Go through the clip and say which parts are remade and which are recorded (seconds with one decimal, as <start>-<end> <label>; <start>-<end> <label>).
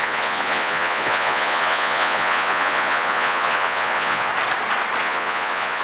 0.0-4.3 remade; 4.3-5.0 recorded; 5.0-5.8 remade